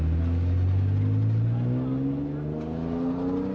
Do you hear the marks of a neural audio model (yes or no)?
no